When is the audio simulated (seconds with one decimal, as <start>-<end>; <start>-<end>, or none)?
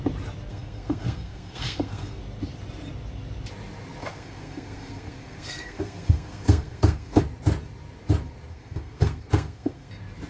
0.5-2.2; 4.0-7.2; 8.5-9.9